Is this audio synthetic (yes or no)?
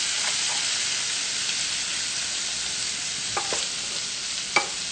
no